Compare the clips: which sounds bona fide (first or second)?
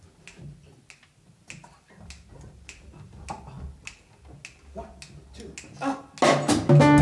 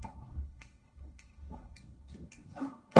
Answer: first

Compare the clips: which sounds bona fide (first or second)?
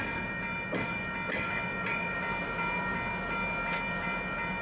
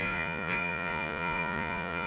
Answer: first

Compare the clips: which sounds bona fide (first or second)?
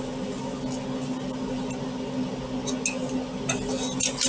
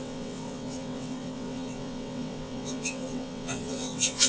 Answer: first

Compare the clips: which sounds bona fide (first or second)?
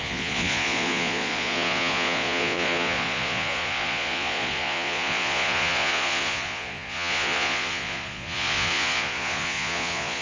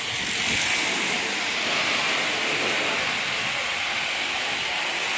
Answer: second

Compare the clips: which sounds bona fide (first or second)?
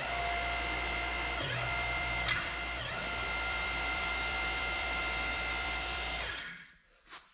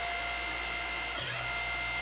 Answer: second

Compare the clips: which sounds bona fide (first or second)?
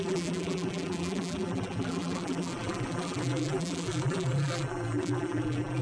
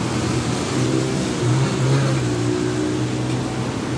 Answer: second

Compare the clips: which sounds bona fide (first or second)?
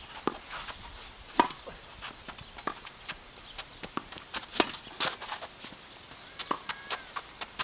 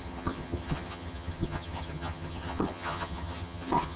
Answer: first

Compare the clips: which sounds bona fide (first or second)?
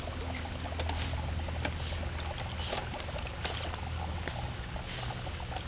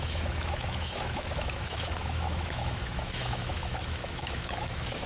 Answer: first